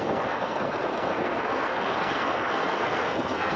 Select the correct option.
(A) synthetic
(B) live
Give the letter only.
A